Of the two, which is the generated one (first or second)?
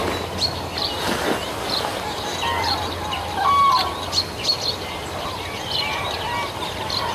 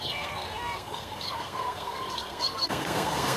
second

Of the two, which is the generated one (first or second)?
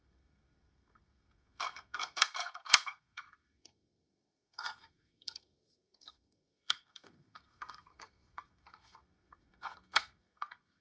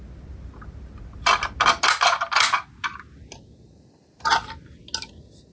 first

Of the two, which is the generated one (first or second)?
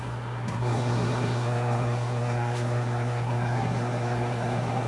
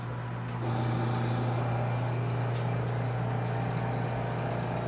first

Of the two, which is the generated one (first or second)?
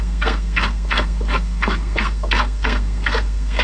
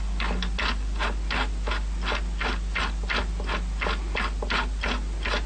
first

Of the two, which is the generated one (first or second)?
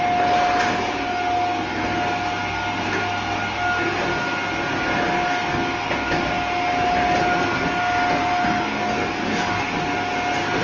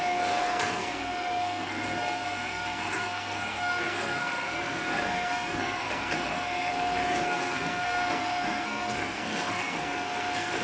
second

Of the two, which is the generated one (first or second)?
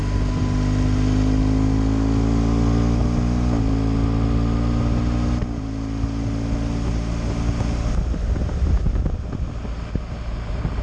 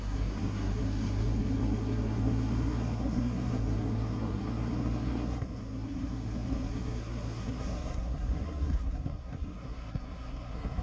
second